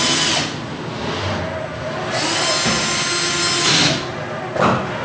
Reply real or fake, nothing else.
real